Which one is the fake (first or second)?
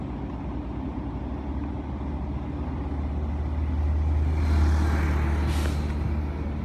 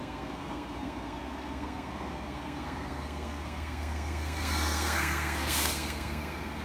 second